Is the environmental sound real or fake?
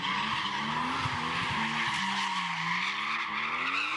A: real